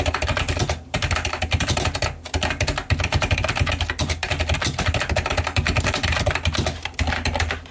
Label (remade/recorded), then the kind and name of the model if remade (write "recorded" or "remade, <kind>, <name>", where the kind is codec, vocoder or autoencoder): recorded